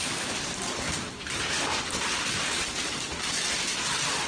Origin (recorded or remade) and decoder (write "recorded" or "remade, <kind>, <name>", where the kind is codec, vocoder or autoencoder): remade, vocoder, BigVGAN v2